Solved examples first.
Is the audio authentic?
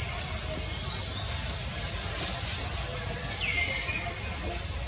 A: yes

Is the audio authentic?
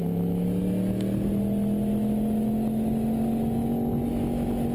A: yes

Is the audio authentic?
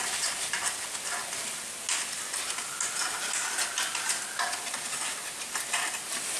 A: yes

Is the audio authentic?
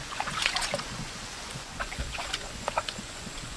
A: no